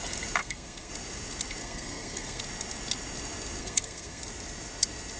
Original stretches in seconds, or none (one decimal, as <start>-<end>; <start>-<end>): 0.0-0.4; 0.9-1.6; 2.4-3.6; 4.2-5.2